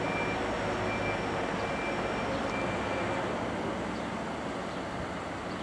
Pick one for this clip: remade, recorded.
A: recorded